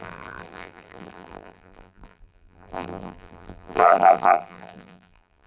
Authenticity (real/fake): fake